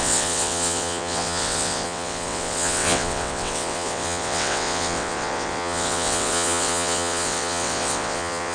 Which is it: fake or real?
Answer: fake